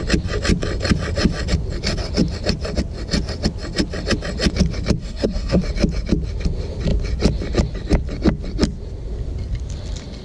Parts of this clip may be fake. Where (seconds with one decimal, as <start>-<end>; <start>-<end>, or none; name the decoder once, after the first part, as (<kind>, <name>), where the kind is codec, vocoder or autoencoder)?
5.0-5.6 (codec, SNAC)